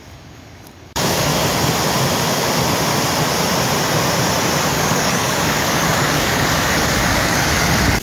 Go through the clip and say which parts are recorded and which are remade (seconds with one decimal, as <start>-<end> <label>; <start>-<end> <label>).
0.0-1.3 remade; 1.3-4.7 recorded; 4.7-8.0 remade